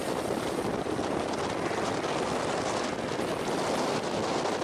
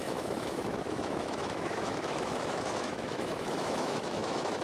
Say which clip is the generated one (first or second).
second